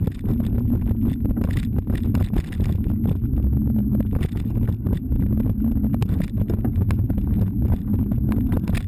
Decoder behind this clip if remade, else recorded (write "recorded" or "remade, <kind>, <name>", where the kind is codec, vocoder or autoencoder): recorded